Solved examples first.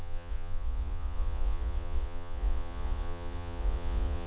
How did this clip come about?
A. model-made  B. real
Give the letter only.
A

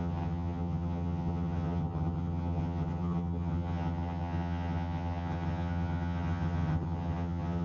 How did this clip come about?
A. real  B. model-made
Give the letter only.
B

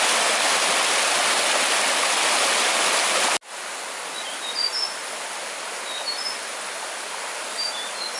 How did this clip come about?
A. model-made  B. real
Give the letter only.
B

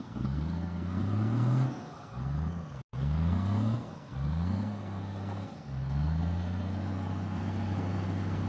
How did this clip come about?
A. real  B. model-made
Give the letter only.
B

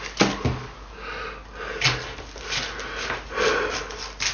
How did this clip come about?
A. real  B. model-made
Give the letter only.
A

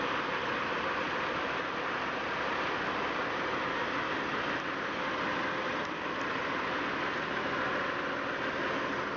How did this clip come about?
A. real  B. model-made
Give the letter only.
A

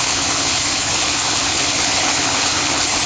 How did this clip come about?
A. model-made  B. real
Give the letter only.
A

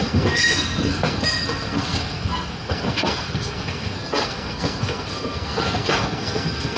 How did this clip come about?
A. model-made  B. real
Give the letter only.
A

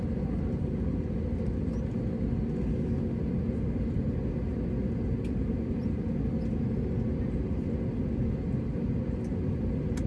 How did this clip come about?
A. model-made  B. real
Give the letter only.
B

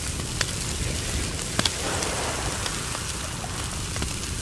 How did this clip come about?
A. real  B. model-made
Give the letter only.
A